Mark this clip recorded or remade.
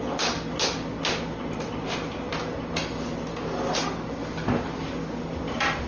recorded